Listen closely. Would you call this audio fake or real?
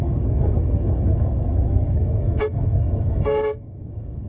fake